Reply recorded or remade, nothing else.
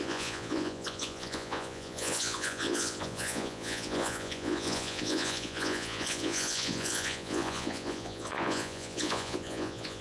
remade